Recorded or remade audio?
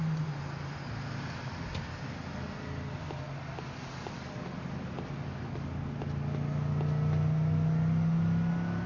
recorded